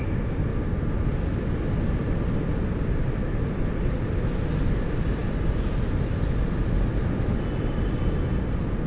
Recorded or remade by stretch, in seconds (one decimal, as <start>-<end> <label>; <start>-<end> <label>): 0.0-8.9 recorded